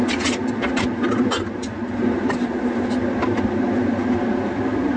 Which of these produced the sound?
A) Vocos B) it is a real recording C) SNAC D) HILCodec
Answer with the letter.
B